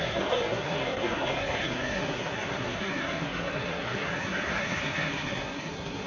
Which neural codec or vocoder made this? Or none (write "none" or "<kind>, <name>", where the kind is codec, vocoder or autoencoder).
codec, SNAC